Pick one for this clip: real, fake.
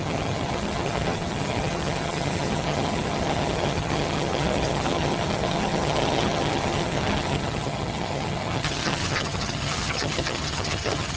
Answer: fake